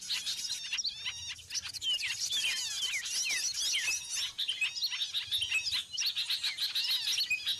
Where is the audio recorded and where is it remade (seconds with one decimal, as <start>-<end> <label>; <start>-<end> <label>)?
0.0-7.6 recorded